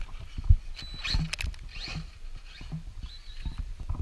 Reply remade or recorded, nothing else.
recorded